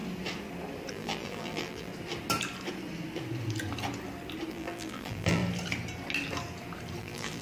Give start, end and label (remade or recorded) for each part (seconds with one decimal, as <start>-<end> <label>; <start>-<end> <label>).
0.0-0.9 recorded; 0.9-1.9 remade; 1.9-4.5 recorded; 4.5-5.4 remade; 5.4-7.0 recorded; 7.0-7.4 remade